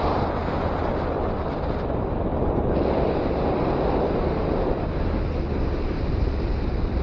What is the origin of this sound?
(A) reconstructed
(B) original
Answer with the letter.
B